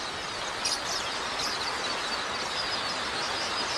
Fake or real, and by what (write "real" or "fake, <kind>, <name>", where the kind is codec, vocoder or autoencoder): fake, vocoder, BigVGAN v2